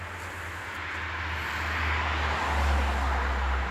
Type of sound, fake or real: real